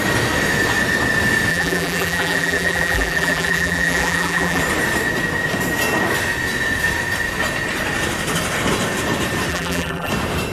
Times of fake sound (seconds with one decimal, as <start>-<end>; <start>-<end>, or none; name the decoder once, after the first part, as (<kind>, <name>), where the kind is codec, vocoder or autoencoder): 1.5-4.6 (vocoder, BigVGAN v2); 9.5-10.1